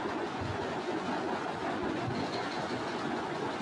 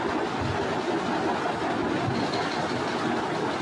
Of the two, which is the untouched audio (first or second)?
second